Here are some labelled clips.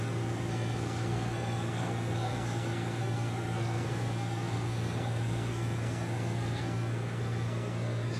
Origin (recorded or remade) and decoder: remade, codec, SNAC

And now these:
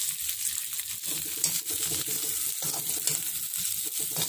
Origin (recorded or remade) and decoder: recorded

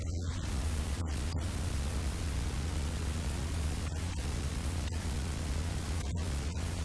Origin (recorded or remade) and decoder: remade, vocoder, Vocos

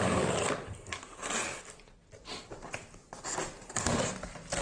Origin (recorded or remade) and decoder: recorded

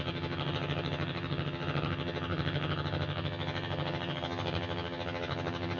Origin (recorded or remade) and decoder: remade, vocoder, HiFi-GAN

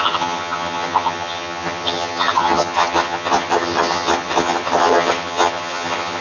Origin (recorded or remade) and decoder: remade, vocoder, HiFi-GAN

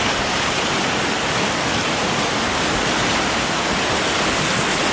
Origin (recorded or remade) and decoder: recorded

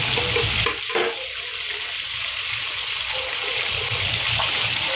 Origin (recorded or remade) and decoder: recorded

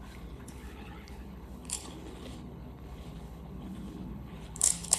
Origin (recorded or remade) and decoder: remade, codec, HILCodec